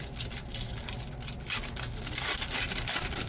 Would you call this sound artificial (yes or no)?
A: no